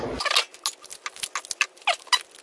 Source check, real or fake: real